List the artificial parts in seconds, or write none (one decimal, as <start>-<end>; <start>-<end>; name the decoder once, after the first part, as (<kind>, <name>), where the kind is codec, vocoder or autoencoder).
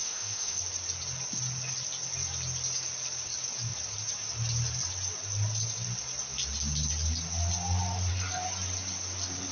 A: 0.0-0.6 (autoencoder, DAC-VAE)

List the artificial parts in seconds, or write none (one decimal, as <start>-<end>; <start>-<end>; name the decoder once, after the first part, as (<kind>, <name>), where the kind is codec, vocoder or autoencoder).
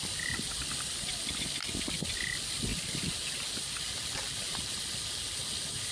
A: none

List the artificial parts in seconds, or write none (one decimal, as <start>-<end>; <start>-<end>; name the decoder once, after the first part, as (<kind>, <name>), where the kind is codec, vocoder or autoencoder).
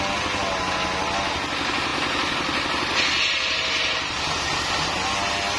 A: none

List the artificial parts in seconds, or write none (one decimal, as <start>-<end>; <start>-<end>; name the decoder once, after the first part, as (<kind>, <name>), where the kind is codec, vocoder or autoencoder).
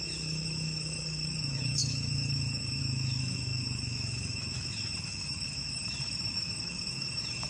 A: 0.0-7.5 (autoencoder, DAC-VAE)